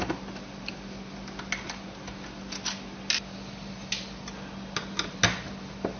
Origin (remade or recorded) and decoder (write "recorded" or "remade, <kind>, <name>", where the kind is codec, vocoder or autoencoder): recorded